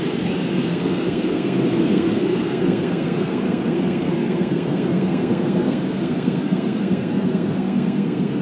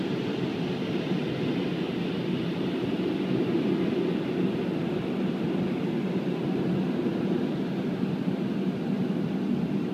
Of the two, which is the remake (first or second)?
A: first